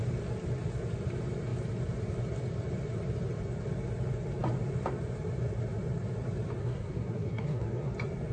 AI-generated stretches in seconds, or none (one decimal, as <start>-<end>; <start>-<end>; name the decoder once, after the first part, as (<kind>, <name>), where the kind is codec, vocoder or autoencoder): 6.6-7.9 (codec, SNAC)